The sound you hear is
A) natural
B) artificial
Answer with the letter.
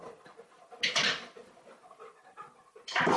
A